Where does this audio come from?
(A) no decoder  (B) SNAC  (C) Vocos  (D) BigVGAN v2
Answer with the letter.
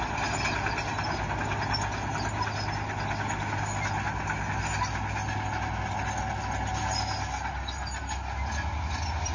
A